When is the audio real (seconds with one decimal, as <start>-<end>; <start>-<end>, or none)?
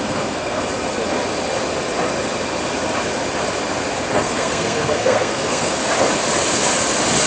0.6-4.1; 5.8-7.3